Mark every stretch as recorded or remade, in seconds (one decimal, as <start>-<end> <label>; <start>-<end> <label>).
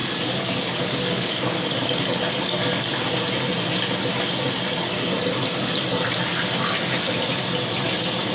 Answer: 0.0-2.9 remade; 2.9-8.3 recorded